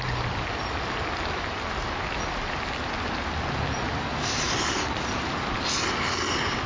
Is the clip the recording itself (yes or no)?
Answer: yes